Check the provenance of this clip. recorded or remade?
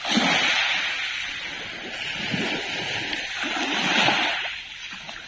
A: recorded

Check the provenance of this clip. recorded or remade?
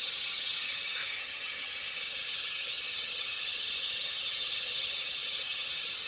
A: remade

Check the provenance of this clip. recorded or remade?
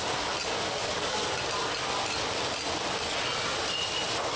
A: recorded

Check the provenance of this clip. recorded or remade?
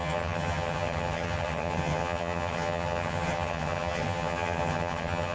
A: remade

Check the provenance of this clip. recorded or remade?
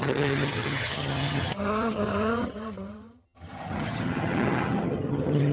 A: remade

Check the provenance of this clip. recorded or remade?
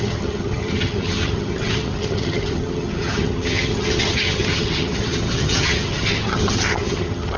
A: remade